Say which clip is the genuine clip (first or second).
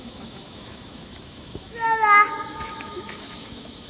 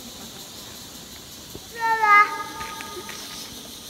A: second